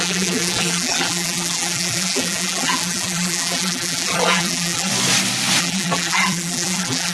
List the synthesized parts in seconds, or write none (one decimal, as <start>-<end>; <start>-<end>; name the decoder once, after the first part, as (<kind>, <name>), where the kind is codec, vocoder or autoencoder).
0.0-4.9 (vocoder, BigVGAN v2); 5.6-7.1